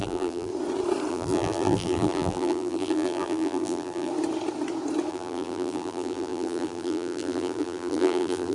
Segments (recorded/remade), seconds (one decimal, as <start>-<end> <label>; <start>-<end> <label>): 0.0-0.5 remade; 0.5-1.1 recorded; 1.1-4.1 remade; 4.1-5.1 recorded; 5.1-8.5 remade